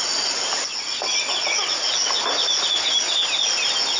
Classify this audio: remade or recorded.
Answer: recorded